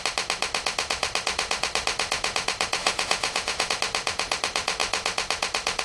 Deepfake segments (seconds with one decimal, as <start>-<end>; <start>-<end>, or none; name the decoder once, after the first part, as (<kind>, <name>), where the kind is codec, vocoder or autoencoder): 2.8-3.7 (vocoder, Vocos)